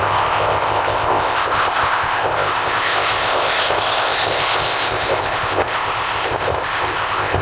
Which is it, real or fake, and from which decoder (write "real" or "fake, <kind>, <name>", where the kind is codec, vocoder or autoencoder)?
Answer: fake, codec, ZipCodec